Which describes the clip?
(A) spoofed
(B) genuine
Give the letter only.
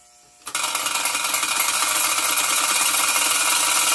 B